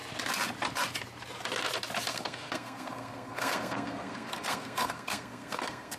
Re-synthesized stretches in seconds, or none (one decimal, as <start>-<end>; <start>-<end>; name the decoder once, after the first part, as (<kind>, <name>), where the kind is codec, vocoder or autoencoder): 2.1-6.0 (codec, SNAC)